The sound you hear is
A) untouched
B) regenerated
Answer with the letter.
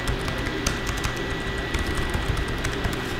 A